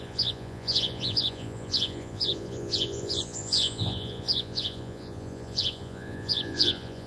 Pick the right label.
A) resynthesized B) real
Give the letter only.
A